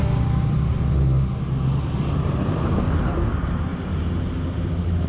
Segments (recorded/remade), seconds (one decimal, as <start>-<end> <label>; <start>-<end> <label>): 0.0-0.8 remade; 0.8-3.1 recorded; 3.1-3.7 remade; 3.7-5.1 recorded